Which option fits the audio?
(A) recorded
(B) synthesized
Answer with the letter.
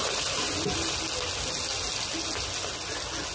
A